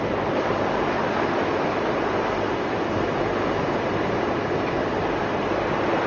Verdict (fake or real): real